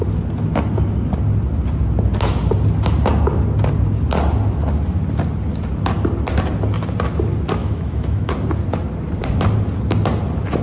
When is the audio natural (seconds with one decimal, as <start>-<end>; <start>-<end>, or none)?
0.0-7.6; 8.3-10.6